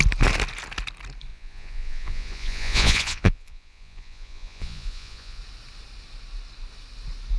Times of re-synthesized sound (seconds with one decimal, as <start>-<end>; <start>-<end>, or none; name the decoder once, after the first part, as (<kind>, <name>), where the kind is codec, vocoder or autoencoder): 1.3-5.4 (vocoder, Vocos)